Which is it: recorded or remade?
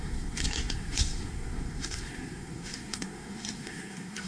remade